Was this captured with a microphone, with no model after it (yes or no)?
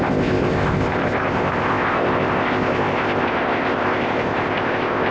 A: no